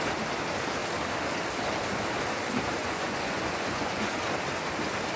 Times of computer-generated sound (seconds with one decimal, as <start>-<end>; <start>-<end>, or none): 2.8-4.1